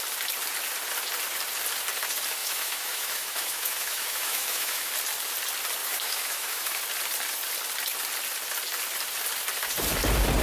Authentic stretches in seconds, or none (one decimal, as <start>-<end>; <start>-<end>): 0.0-2.4; 4.9-5.8; 6.8-10.4